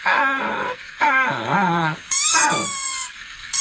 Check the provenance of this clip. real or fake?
fake